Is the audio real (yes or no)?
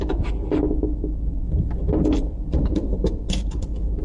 no